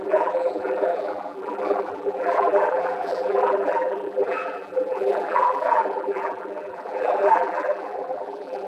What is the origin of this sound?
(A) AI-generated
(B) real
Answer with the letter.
A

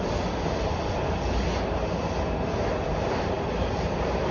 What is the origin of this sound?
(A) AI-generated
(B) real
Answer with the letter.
B